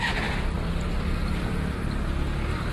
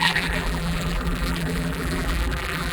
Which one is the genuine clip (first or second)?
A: first